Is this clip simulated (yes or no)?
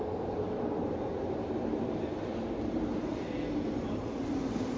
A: no